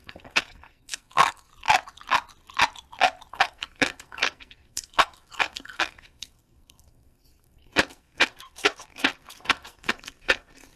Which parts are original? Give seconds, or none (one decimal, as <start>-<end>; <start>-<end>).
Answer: 1.5-3.3